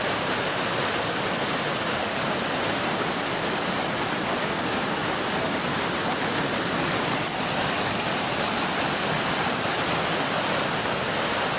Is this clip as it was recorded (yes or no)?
yes